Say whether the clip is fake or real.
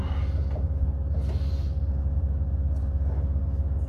real